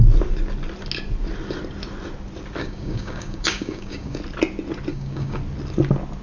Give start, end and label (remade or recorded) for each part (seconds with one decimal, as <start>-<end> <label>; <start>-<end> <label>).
0.0-2.6 recorded; 2.6-4.2 remade; 4.2-4.9 recorded; 4.9-5.4 remade; 5.4-6.2 recorded